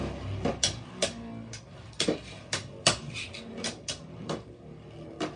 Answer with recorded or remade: recorded